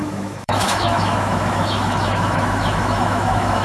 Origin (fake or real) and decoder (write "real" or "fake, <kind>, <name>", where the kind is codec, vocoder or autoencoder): fake, autoencoder, DAC-VAE